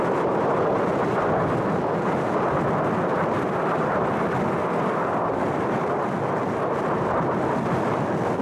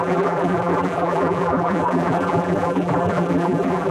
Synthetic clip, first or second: second